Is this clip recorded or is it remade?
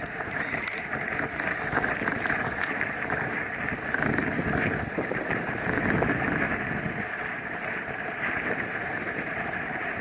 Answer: remade